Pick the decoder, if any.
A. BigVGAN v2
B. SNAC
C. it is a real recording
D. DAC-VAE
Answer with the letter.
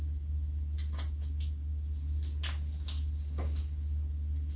C